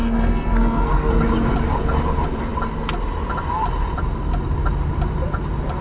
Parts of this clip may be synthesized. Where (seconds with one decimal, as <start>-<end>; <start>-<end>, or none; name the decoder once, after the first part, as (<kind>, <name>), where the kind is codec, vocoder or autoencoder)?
0.0-1.1 (codec, SNAC)